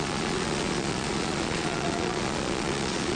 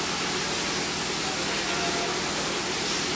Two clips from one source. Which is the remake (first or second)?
first